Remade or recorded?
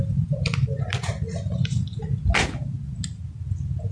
recorded